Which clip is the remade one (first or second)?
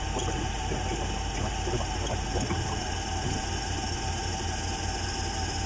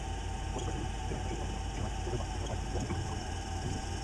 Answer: first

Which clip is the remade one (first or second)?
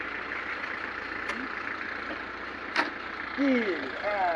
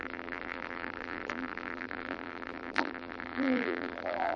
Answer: second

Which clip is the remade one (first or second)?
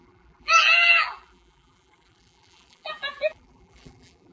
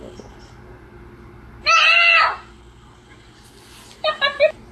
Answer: first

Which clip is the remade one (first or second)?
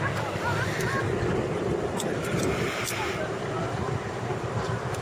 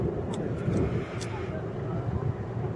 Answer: first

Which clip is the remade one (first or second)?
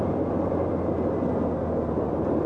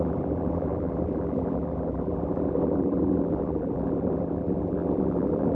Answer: second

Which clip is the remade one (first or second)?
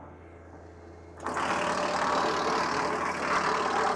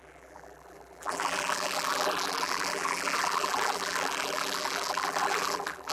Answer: second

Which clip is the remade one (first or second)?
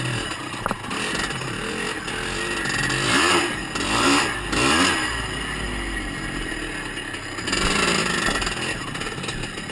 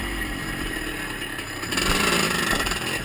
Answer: second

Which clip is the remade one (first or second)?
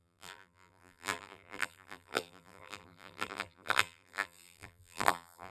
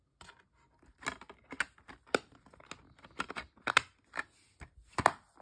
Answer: first